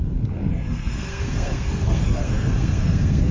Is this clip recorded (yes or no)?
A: no